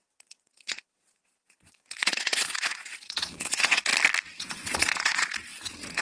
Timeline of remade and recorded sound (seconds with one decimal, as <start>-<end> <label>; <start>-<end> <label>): 0.0-3.9 remade; 3.9-4.4 recorded; 4.4-6.0 remade